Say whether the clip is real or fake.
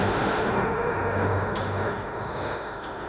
fake